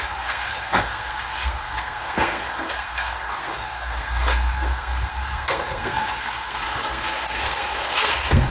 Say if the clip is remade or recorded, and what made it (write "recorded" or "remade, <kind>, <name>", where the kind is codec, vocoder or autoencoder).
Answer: remade, codec, SNAC